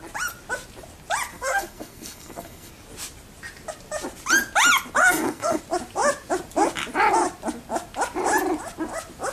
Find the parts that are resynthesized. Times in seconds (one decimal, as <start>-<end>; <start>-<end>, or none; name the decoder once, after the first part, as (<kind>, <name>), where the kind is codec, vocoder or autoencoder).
1.3-2.7 (codec, SNAC); 5.0-5.6